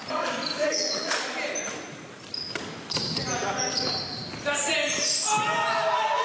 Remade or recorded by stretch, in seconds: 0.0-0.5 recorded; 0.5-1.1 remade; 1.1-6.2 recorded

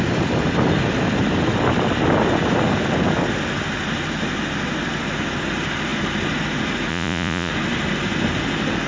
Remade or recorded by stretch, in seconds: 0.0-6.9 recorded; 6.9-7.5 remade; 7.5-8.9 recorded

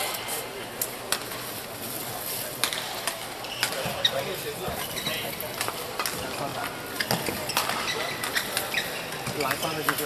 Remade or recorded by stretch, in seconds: 0.0-10.1 recorded